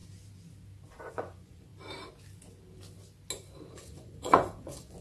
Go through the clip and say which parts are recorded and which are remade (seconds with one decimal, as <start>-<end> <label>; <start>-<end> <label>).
0.0-1.0 recorded; 1.0-1.7 remade; 1.7-3.7 recorded; 3.7-5.0 remade

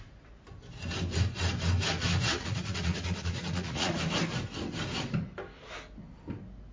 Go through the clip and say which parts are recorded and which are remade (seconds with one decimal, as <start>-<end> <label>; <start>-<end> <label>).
0.0-2.1 recorded; 2.1-4.0 remade; 4.0-6.7 recorded

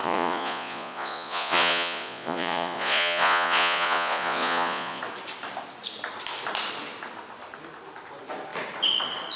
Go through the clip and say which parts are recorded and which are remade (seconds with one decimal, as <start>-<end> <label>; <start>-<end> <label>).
0.0-5.0 remade; 5.0-9.4 recorded

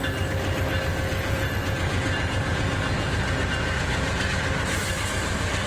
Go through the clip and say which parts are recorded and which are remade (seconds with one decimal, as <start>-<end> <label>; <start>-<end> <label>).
0.0-0.9 recorded; 0.9-4.3 remade; 4.3-5.7 recorded

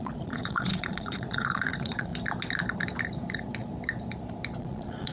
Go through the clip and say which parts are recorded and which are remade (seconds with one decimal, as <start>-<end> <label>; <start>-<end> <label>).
0.0-2.1 remade; 2.1-3.3 recorded; 3.3-3.7 remade; 3.7-4.6 recorded; 4.6-5.1 remade

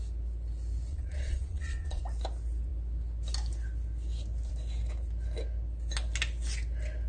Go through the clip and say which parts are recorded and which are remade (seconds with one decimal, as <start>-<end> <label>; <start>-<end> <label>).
0.0-0.9 recorded; 0.9-2.0 remade; 2.0-7.1 recorded

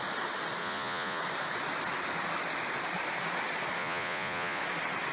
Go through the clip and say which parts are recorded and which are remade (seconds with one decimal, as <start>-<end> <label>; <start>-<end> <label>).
0.0-0.6 recorded; 0.6-1.2 remade; 1.2-3.8 recorded; 3.8-4.6 remade; 4.6-5.1 recorded

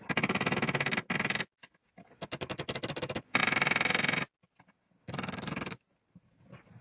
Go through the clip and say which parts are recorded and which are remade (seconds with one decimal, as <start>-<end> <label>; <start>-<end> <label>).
0.0-6.8 recorded